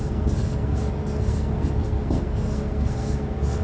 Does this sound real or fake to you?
fake